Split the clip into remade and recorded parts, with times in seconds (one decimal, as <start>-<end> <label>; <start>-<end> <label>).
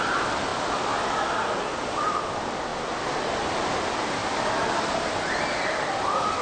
0.0-6.4 recorded